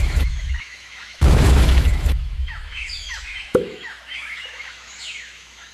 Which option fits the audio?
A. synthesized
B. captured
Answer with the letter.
A